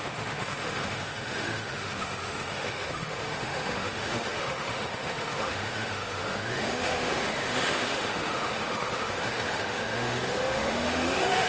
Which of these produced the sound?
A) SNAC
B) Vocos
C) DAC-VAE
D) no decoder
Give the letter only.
C